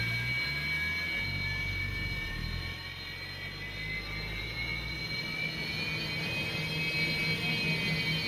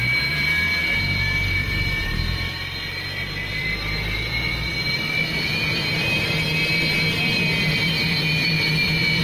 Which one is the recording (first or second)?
first